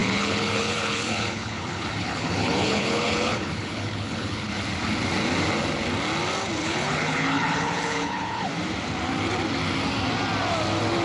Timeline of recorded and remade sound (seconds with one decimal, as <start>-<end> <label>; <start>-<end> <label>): 0.0-4.5 remade; 4.5-6.6 recorded; 6.6-8.5 remade; 8.5-11.0 recorded